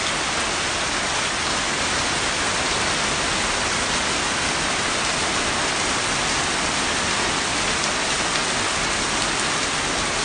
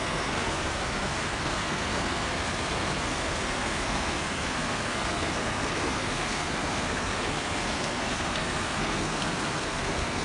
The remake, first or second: second